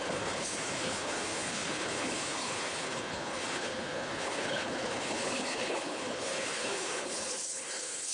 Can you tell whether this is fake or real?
fake